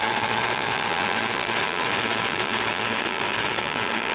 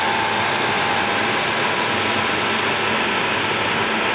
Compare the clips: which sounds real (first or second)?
second